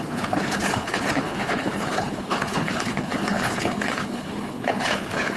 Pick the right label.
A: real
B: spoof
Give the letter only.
B